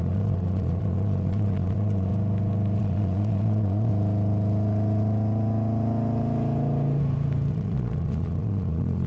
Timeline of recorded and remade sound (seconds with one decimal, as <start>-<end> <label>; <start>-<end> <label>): 0.0-2.1 remade; 2.1-2.8 recorded; 2.8-3.9 remade; 3.9-7.5 recorded; 7.5-9.1 remade